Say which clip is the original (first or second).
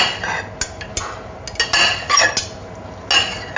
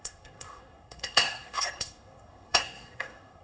first